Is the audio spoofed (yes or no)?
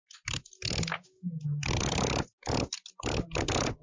no